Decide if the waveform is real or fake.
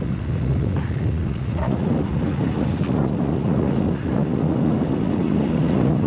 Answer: fake